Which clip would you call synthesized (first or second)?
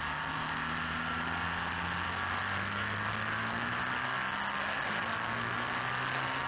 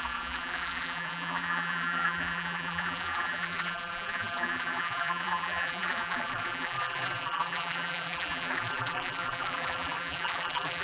second